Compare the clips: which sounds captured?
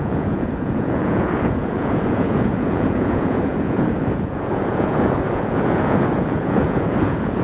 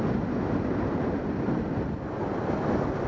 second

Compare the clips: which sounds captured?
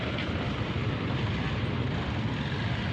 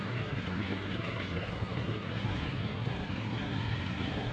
first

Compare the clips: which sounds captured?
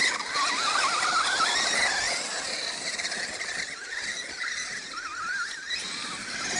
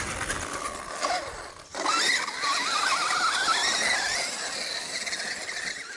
second